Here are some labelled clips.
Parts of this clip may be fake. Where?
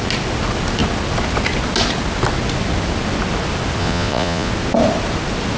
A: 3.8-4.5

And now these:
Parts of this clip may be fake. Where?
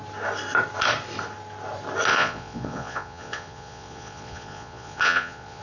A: 2.1-5.6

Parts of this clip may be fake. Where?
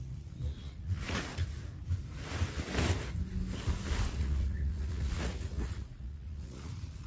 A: 0.0-1.3; 4.1-7.1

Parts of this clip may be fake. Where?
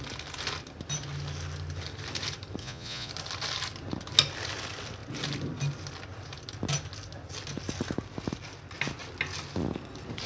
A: 2.6-3.1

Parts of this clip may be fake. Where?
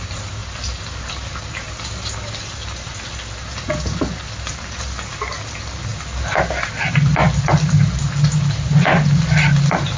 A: none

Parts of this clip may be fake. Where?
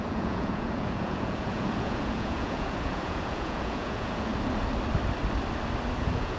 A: 0.0-4.3; 6.0-6.4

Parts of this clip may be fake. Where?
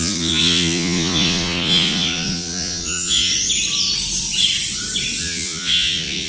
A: 0.0-3.3; 5.2-6.3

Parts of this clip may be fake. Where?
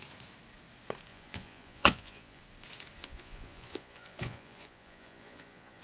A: 1.1-2.4; 3.0-5.8